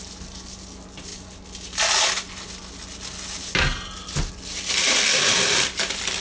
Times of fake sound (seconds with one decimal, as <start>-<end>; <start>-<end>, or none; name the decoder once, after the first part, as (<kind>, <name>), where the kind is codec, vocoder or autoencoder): none